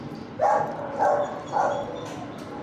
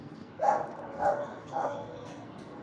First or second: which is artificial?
second